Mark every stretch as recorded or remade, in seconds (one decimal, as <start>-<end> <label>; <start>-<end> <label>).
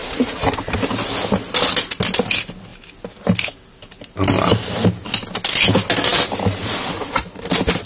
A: 0.0-0.5 remade; 0.5-7.9 recorded